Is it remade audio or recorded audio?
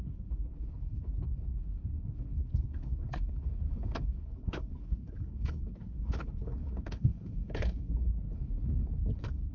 remade